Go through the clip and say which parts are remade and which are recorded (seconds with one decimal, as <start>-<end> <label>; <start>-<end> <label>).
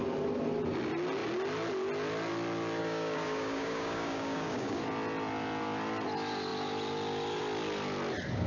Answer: 0.0-2.8 recorded; 2.8-4.8 remade; 4.8-8.5 recorded